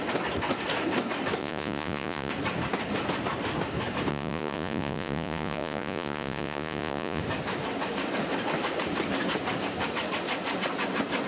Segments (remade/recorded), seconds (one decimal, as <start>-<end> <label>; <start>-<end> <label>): 0.0-1.4 recorded; 1.4-2.3 remade; 2.3-4.1 recorded; 4.1-7.2 remade; 7.2-11.3 recorded